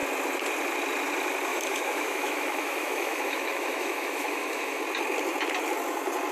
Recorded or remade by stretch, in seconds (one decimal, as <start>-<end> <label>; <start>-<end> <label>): 0.0-1.5 recorded; 1.5-4.8 remade; 4.8-6.3 recorded